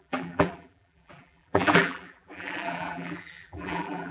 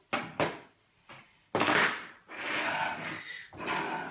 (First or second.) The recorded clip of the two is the second